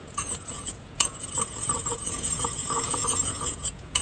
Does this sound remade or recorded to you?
remade